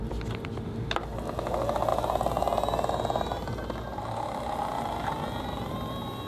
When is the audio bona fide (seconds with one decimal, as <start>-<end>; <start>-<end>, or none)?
0.0-6.3